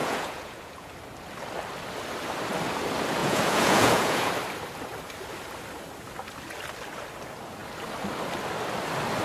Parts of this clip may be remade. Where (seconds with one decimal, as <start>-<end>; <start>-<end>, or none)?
0.0-0.9; 3.2-4.3